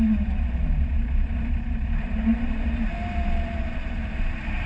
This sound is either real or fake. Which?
fake